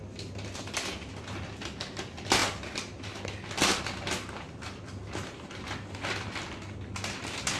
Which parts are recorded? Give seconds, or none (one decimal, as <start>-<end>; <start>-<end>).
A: 0.0-7.6